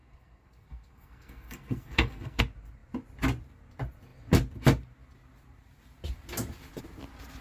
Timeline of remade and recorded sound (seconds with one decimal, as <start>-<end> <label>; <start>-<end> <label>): 0.0-2.4 remade; 2.4-7.4 recorded